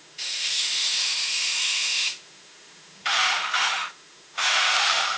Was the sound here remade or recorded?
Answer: remade